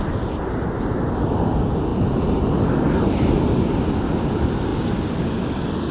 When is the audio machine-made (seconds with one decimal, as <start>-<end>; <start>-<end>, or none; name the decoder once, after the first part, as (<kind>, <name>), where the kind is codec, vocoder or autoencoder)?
none